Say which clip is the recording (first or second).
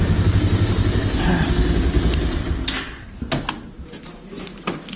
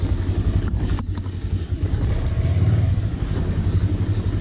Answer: first